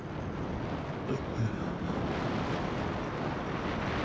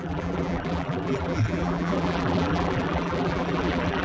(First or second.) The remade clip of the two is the second